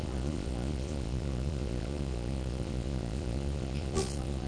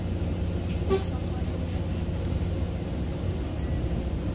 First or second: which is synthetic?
first